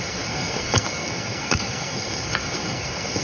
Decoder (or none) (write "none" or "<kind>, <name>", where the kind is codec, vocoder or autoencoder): codec, SNAC